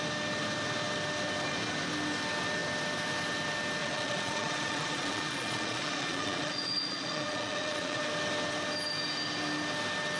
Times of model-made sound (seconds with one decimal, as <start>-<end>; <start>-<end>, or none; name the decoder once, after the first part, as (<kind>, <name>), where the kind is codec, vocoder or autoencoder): 3.8-8.0 (vocoder, Vocos)